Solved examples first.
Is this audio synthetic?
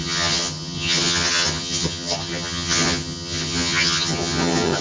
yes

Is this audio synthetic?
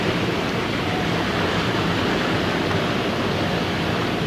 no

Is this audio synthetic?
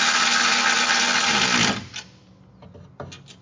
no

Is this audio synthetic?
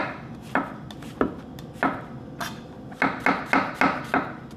no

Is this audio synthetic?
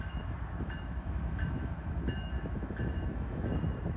yes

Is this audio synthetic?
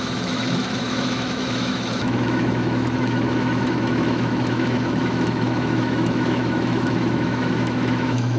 yes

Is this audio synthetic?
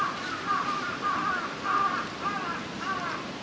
no